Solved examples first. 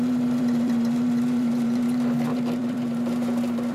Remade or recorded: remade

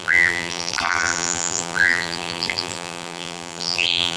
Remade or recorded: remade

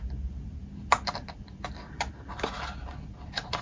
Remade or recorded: recorded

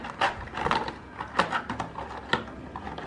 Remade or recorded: recorded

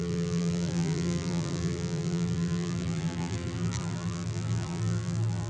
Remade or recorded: remade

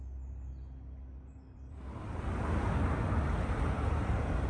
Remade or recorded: remade